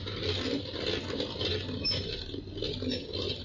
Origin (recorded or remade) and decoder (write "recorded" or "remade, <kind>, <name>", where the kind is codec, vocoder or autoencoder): recorded